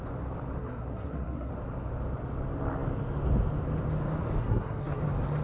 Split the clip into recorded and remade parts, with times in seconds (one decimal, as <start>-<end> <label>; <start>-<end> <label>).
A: 0.0-0.6 recorded; 0.6-1.5 remade; 1.5-4.4 recorded; 4.4-5.0 remade; 5.0-5.4 recorded